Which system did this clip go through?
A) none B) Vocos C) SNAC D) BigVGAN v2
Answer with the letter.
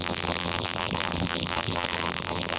D